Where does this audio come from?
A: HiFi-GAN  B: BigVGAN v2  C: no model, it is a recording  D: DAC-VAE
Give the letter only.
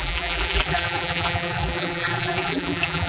B